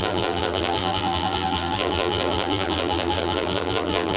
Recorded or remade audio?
remade